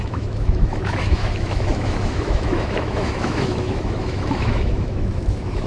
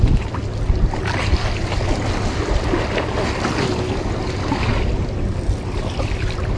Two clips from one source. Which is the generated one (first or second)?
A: first